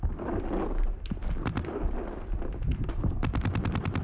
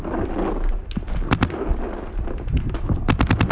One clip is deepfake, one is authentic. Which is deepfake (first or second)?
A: first